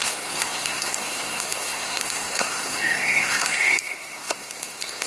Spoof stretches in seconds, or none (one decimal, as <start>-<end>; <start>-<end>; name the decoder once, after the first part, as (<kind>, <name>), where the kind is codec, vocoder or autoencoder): 0.0-5.1 (codec, SNAC)